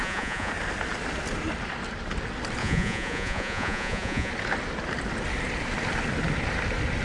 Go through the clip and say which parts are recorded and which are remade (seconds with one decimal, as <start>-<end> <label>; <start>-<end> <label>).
0.0-0.5 remade; 0.5-2.6 recorded; 2.6-4.3 remade; 4.3-7.0 recorded